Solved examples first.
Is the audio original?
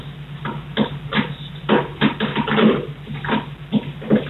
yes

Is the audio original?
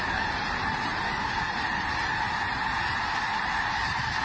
yes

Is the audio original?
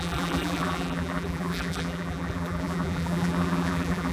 no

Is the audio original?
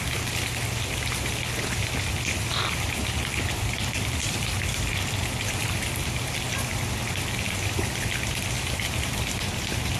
yes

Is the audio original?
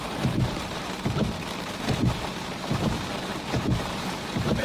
no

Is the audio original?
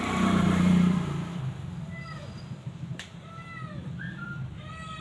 no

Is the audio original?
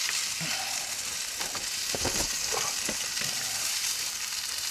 no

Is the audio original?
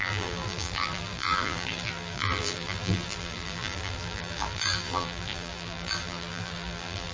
no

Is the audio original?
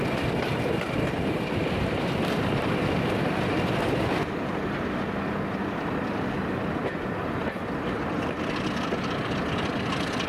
yes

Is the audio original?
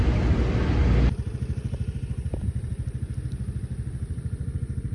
yes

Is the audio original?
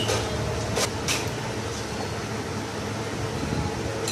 yes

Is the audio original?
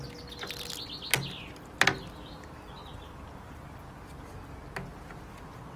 yes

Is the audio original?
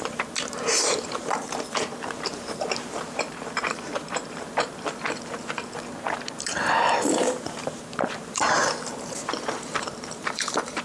no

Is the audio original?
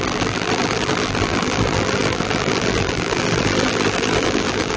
no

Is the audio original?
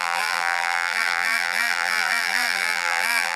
no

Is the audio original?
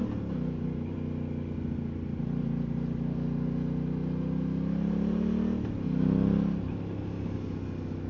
yes